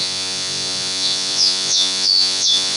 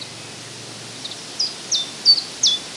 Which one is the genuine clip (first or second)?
second